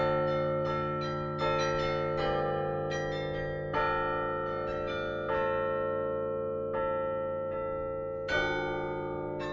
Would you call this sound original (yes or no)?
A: yes